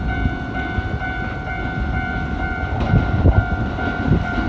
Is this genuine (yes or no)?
no